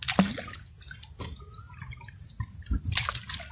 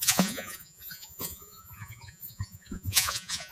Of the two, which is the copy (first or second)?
second